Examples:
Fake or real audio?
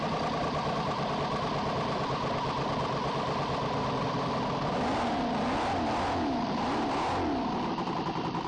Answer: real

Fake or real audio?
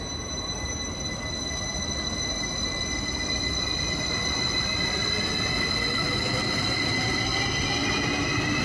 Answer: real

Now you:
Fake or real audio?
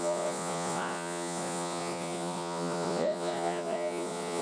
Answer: fake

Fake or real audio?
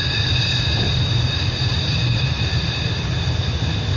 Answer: fake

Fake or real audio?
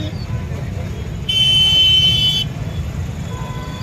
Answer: fake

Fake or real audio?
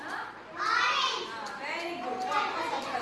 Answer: real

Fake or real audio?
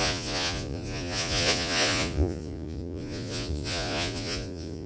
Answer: fake